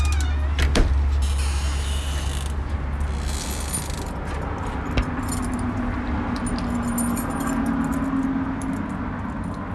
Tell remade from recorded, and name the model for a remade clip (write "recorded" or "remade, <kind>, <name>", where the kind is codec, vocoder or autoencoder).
recorded